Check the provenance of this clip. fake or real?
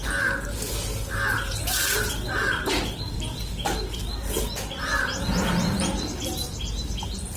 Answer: real